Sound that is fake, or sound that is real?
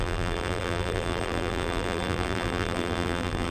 fake